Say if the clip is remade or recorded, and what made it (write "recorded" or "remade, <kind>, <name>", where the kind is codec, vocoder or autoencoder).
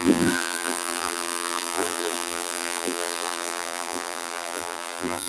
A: remade, vocoder, BigVGAN v2